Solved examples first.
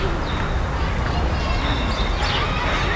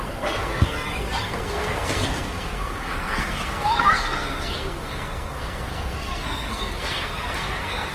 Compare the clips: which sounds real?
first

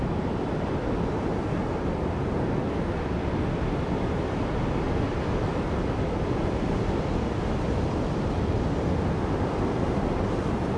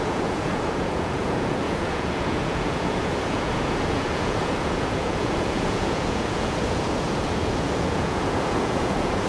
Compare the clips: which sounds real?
first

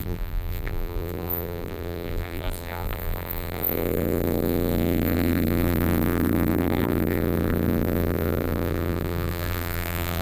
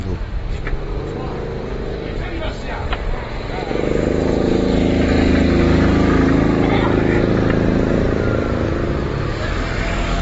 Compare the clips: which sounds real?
second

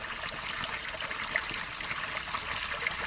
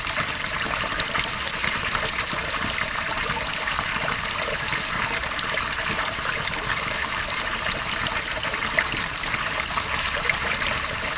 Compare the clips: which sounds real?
first